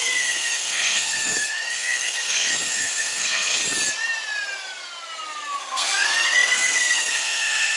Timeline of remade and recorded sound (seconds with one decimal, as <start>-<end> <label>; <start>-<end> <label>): 0.0-3.6 remade; 3.6-5.6 recorded; 5.6-7.8 remade